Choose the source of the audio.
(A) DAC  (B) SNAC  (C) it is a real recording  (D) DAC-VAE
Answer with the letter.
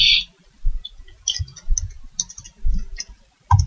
C